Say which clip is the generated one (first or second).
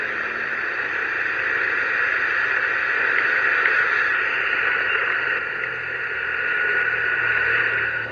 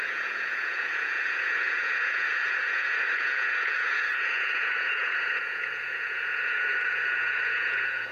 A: second